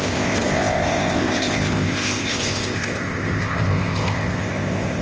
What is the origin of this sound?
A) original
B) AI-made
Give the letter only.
B